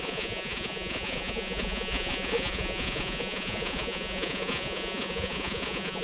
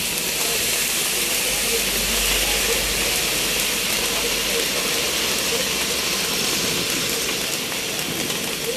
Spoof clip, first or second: first